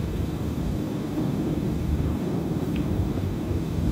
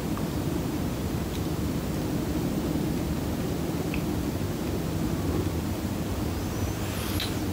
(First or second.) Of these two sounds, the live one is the second